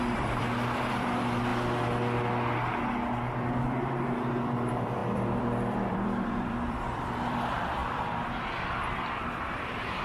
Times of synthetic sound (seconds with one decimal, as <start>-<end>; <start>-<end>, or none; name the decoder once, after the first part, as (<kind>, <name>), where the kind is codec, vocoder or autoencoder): 0.0-1.5 (vocoder, BigVGAN v2); 4.2-10.0